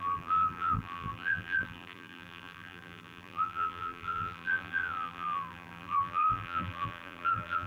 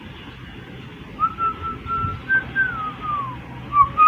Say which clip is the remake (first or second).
first